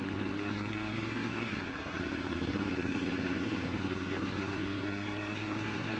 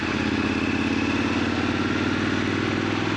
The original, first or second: second